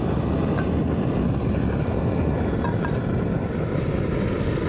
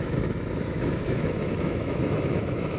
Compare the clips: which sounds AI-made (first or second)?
second